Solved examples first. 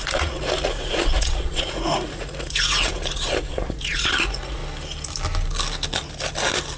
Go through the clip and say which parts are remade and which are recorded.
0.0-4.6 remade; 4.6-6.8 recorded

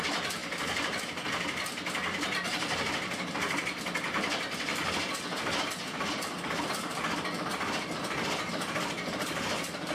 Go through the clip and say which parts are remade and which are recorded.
0.0-9.9 recorded

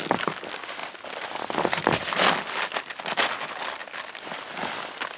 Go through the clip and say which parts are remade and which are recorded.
0.0-5.2 recorded